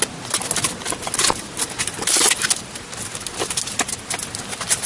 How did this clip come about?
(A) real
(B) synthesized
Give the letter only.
A